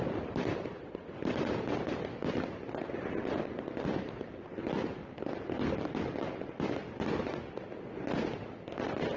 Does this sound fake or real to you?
real